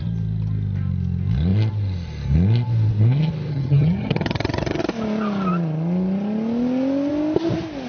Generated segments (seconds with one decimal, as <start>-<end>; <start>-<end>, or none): 3.5-4.8